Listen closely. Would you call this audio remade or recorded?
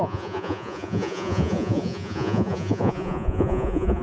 remade